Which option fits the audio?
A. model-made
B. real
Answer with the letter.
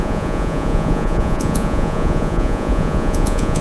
A